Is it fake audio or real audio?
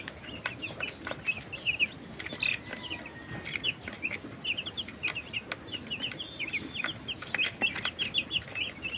real